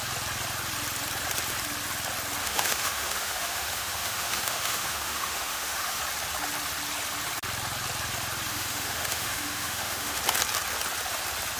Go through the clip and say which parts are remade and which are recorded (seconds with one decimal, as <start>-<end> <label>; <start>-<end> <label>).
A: 0.0-2.4 recorded; 2.4-6.0 remade; 6.0-8.5 recorded; 8.5-10.2 remade; 10.2-11.6 recorded